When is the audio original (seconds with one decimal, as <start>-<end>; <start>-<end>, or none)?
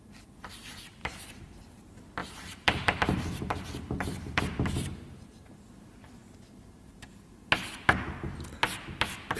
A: 0.0-1.0; 1.6-2.2; 4.4-9.4